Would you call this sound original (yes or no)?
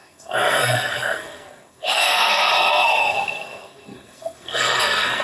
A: no